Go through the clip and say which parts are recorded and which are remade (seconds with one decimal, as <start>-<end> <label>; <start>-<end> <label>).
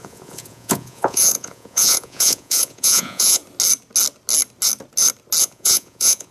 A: 0.0-3.4 remade; 3.4-5.4 recorded; 5.4-6.3 remade